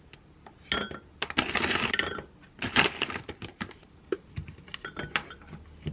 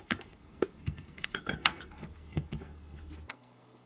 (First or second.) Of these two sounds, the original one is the first